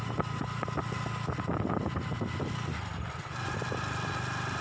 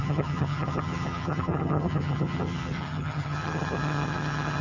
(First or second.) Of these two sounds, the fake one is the second